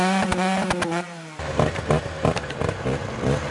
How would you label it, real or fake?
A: fake